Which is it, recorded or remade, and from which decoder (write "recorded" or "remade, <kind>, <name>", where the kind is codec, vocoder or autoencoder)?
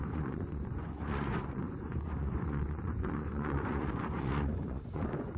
remade, vocoder, Vocos